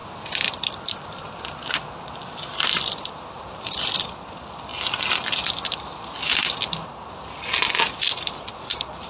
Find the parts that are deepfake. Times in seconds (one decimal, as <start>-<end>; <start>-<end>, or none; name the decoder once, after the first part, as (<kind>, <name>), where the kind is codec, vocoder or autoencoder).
none